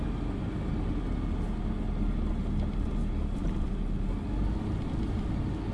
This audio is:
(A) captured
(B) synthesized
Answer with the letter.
A